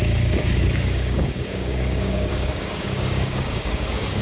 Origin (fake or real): fake